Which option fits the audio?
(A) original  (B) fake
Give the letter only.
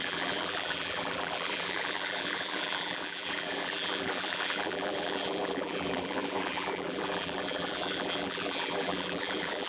B